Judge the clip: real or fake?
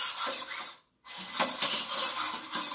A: real